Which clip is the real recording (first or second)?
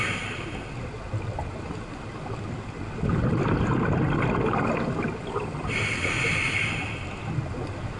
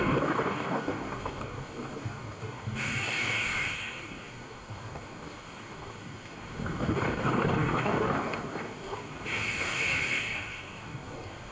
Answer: first